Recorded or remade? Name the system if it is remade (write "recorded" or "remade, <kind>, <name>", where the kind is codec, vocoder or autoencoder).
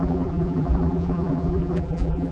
remade, vocoder, BigVGAN v2